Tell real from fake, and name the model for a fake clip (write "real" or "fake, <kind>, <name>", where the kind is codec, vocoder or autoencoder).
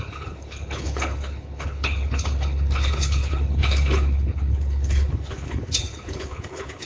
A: fake, codec, HILCodec